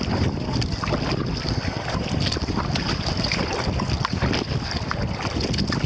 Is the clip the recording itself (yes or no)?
yes